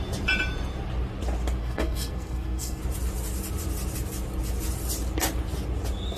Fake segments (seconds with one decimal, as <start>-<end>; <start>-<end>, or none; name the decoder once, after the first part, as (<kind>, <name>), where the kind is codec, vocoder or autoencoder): 1.6-2.8 (codec, SNAC)